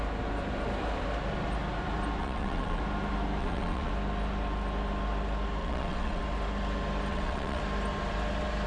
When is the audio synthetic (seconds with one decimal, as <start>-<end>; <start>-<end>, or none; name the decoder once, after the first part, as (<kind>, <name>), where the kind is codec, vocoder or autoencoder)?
2.2-2.8 (vocoder, WaveNeXt); 3.4-3.9; 5.6-6.2; 7.1-7.6